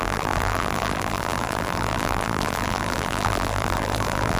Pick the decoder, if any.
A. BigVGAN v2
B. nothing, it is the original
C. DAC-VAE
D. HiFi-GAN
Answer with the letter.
A